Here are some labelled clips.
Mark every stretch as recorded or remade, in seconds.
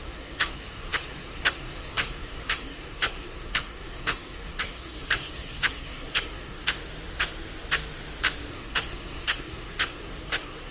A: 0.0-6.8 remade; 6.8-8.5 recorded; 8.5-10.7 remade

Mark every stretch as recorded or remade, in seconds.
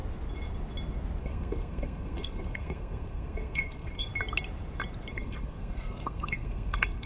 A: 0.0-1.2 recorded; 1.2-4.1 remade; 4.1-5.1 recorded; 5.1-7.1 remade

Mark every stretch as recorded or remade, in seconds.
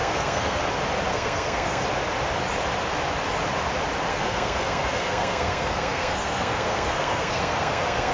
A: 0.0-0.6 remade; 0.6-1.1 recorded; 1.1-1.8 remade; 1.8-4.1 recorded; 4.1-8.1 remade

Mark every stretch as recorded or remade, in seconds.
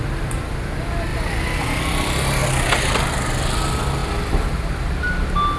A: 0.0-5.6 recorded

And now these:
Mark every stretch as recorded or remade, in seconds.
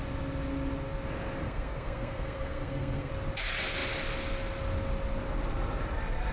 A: 0.0-1.4 recorded; 1.4-3.1 remade; 3.1-6.3 recorded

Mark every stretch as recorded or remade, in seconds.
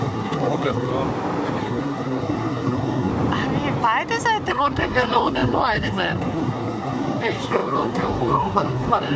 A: 0.0-0.9 remade; 0.9-1.6 recorded; 1.6-3.1 remade; 3.1-4.5 recorded; 4.5-9.2 remade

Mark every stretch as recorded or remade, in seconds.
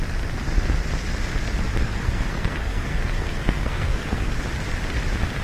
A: 0.0-1.8 recorded; 1.8-4.3 remade; 4.3-5.4 recorded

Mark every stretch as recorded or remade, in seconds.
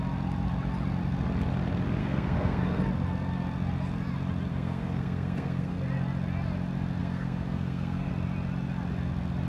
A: 0.0-2.0 recorded; 2.0-2.8 remade; 2.8-4.5 recorded; 4.5-5.8 remade; 5.8-7.0 recorded; 7.0-8.1 remade; 8.1-9.5 recorded